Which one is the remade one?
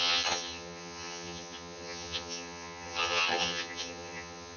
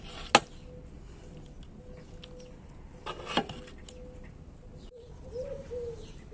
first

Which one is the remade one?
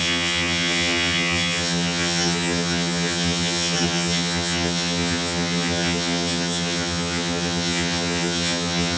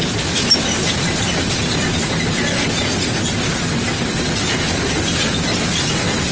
first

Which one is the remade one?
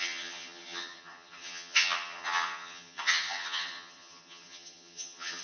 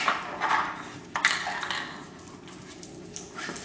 first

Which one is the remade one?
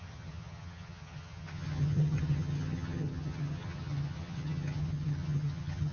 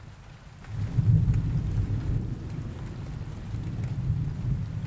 first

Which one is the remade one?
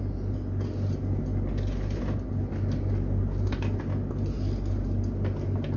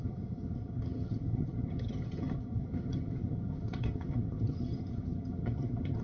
second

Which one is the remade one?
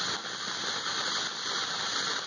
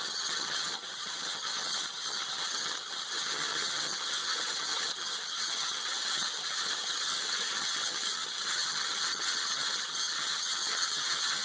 second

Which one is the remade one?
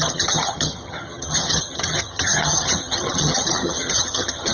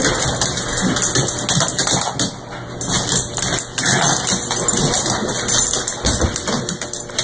first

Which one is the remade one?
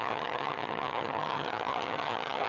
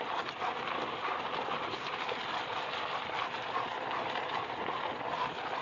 first